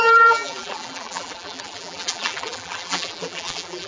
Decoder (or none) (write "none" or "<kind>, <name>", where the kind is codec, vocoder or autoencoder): vocoder, BigVGAN v2